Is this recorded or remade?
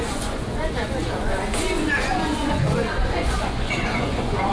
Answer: remade